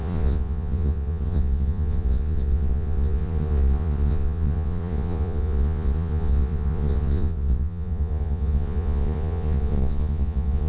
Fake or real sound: fake